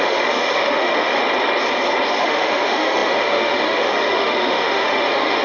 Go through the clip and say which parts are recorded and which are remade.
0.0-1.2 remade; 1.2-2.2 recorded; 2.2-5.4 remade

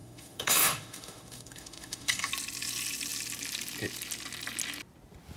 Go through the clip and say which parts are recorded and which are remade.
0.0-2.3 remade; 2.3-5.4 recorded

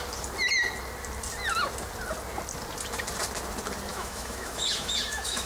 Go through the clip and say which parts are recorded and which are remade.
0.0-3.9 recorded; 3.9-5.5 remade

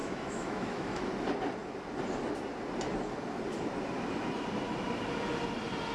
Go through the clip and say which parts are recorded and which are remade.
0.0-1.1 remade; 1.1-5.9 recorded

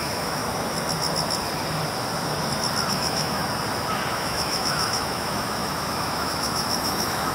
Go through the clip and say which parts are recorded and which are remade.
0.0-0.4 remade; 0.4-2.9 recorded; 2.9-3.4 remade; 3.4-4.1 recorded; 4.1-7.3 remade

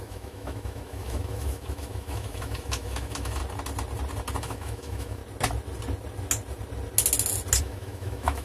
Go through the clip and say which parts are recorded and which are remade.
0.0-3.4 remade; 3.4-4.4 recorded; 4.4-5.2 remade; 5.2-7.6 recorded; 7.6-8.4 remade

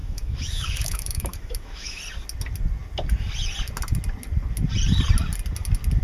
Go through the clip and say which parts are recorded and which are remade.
0.0-2.0 remade; 2.0-6.0 recorded

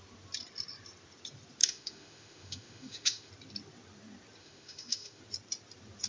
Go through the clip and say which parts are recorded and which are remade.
0.0-1.6 recorded; 1.6-3.3 remade; 3.3-4.4 recorded; 4.4-5.2 remade; 5.2-6.1 recorded